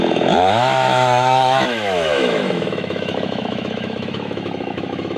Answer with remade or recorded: remade